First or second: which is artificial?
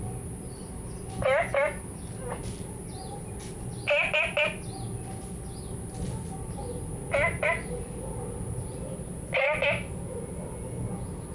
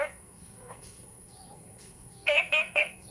second